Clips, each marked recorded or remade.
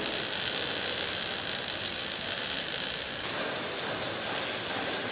remade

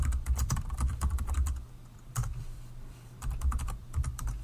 remade